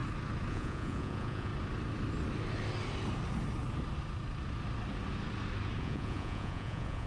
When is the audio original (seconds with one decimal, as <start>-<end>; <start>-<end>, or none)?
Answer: 0.0-0.5; 1.5-5.8